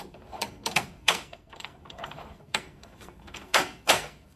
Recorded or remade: remade